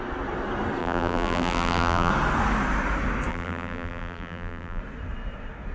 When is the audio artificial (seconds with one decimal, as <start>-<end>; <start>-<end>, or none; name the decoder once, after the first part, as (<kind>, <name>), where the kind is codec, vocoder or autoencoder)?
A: 0.8-2.1 (vocoder, BigVGAN v2); 3.3-4.8